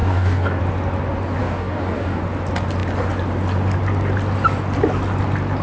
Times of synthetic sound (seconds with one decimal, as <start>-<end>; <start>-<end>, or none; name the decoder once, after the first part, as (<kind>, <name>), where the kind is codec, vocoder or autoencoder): 0.0-0.6 (codec, DAC); 1.4-2.2